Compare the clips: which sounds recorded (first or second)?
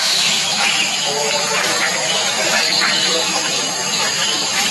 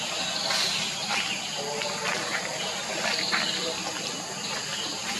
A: second